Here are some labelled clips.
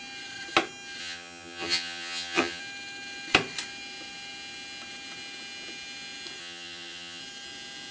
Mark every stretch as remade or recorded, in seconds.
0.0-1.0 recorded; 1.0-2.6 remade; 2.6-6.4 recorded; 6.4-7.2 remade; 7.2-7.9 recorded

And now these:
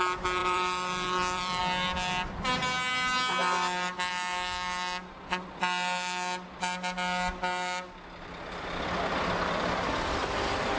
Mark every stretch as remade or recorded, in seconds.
0.0-0.4 recorded; 0.4-1.6 remade; 1.6-10.8 recorded

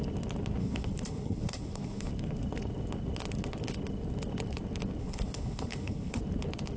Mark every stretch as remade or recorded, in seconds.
0.0-0.6 recorded; 0.6-2.1 remade; 2.1-5.0 recorded; 5.0-6.2 remade; 6.2-6.8 recorded